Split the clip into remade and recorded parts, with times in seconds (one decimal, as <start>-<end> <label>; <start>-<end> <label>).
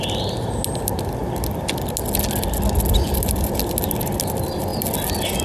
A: 0.0-5.4 recorded